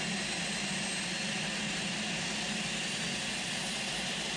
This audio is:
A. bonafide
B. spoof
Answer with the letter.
A